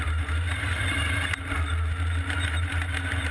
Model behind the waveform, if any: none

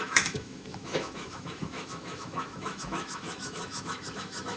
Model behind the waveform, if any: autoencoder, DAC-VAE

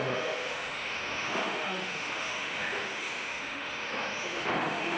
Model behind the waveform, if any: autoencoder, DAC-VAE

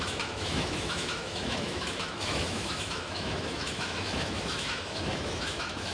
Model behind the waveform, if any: autoencoder, DAC-VAE